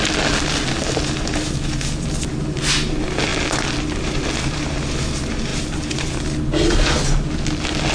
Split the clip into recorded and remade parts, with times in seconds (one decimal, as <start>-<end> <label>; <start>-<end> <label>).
0.0-7.9 recorded